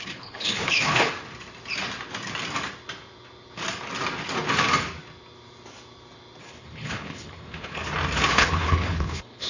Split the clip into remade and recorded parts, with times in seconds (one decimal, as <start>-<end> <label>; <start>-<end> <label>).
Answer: 0.0-1.1 remade; 1.1-6.4 recorded; 6.4-7.8 remade; 7.8-8.3 recorded; 8.3-9.5 remade